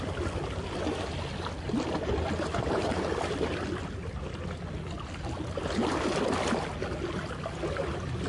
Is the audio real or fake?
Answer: real